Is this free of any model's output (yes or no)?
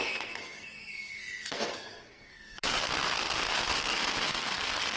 no